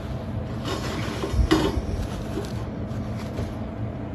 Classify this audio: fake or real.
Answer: real